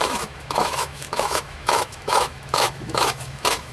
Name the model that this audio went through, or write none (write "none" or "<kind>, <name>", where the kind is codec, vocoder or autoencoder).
autoencoder, DAC-VAE